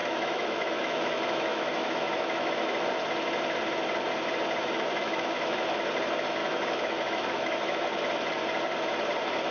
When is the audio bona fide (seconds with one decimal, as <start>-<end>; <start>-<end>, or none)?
2.9-4.6; 5.6-6.4; 7.8-9.5